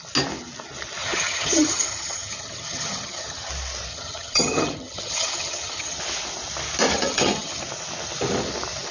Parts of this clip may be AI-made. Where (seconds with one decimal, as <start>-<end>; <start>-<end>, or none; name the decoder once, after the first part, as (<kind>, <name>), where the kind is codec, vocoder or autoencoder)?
1.0-3.5 (vocoder, HiFi-GAN); 3.9-6.0; 6.9-7.6